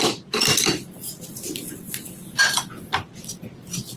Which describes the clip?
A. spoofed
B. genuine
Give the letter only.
B